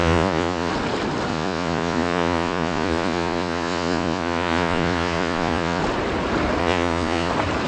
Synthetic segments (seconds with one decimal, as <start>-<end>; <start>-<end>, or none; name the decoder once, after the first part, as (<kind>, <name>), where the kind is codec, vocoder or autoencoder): 0.0-0.7 (vocoder, Vocos); 1.3-5.8; 6.6-7.3